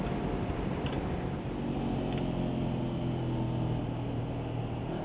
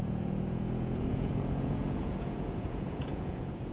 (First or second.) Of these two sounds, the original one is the first